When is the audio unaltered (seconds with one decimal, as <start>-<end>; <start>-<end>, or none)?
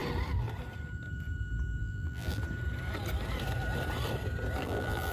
0.0-1.8; 2.4-4.6